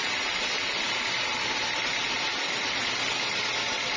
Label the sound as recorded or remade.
recorded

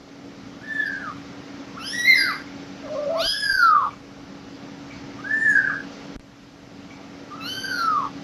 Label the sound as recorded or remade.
recorded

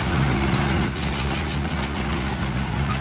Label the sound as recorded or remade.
remade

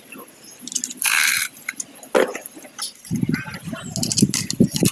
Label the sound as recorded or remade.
recorded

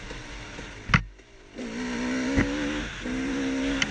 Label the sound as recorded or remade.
recorded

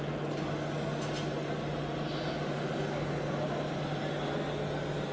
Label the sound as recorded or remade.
recorded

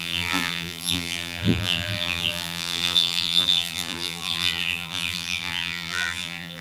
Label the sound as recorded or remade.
remade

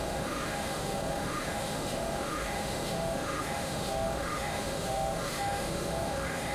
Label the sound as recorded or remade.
remade